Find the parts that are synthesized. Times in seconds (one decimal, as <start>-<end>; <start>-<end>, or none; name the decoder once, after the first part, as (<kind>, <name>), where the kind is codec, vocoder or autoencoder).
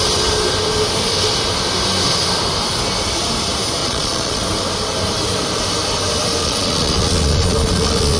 3.8-4.4 (vocoder, Vocos); 6.4-8.2